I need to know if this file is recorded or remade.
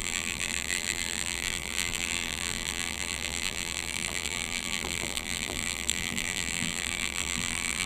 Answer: remade